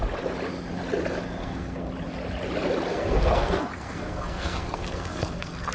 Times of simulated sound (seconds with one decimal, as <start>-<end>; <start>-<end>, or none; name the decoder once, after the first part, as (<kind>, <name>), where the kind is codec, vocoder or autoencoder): 1.4-1.9 (codec, SNAC); 2.9-5.7